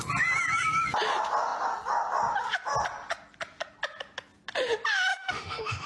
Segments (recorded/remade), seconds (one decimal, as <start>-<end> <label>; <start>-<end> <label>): 0.0-5.1 recorded; 5.1-5.9 remade